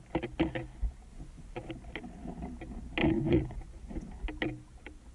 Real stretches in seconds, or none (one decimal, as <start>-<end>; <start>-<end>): 0.0-1.1; 1.7-3.0; 4.1-5.1